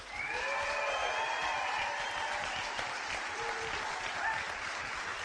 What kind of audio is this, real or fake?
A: real